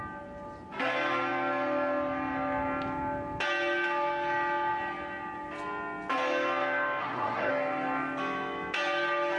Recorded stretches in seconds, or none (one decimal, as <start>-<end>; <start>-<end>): 0.0-7.0; 7.5-9.4